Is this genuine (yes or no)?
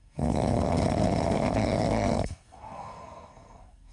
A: no